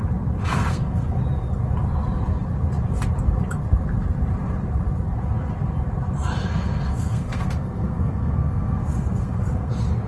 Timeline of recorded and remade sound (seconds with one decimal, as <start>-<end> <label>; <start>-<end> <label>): 0.0-0.5 recorded; 0.5-1.2 remade; 1.2-6.5 recorded; 6.5-9.7 remade; 9.7-10.1 recorded